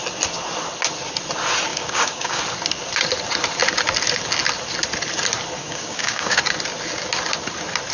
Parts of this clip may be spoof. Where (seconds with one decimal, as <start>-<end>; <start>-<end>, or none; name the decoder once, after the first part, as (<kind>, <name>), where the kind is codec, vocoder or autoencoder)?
1.7-2.4 (codec, DAC); 5.6-6.4